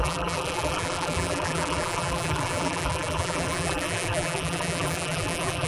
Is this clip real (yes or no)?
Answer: no